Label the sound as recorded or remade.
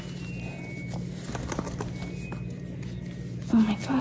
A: recorded